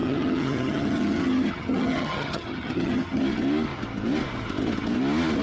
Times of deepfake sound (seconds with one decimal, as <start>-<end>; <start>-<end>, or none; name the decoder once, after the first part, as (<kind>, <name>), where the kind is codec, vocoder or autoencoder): 0.0-3.2 (vocoder, HiFi-GAN)